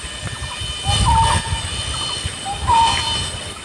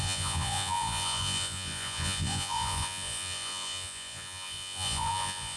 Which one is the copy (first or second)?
second